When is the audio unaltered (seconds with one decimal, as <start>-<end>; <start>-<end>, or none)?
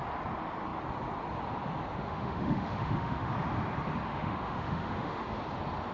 0.0-2.0; 3.3-4.1; 5.4-5.9